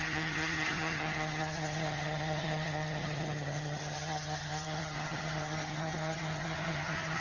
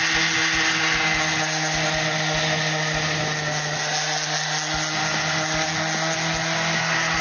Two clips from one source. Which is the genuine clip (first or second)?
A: second